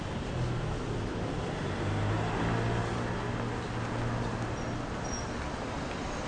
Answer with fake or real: real